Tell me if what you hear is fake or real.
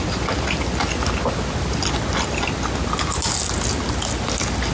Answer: real